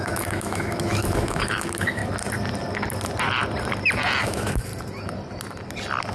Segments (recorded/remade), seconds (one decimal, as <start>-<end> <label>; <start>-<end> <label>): 0.0-2.0 remade; 2.0-4.2 recorded; 4.2-4.7 remade; 4.7-6.1 recorded

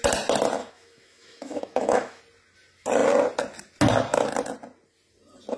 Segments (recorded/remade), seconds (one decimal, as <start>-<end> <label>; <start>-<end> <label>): 0.0-0.6 recorded; 0.6-2.2 remade; 2.2-5.6 recorded

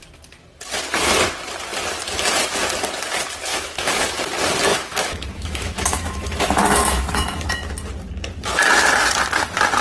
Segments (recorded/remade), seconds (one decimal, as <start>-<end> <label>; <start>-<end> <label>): 0.0-3.5 recorded; 3.5-4.0 remade; 4.0-4.7 recorded; 4.7-7.7 remade; 7.7-9.8 recorded

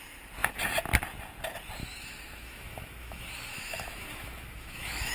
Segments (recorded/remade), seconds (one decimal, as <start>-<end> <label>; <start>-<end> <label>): 0.0-1.8 recorded; 1.8-5.1 remade

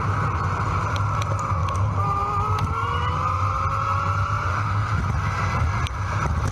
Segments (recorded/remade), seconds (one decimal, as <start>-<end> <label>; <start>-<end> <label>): 0.0-4.5 recorded; 4.5-5.0 remade; 5.0-6.5 recorded

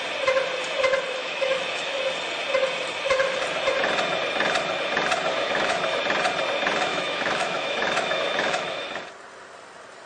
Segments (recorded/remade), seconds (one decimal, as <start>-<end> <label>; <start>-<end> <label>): 0.0-1.2 recorded; 1.2-2.0 remade; 2.0-5.3 recorded; 5.3-6.0 remade; 6.0-6.9 recorded; 6.9-9.0 remade; 9.0-10.1 recorded

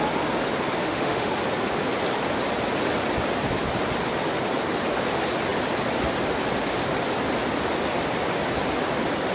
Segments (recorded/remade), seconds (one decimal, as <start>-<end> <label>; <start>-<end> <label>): 0.0-0.8 recorded; 0.8-1.3 remade; 1.3-9.3 recorded

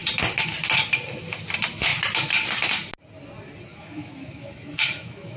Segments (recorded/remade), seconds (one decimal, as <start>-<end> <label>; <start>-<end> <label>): 0.0-3.7 recorded; 3.7-5.4 remade